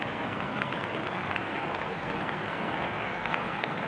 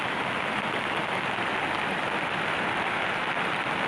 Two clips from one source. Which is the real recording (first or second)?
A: second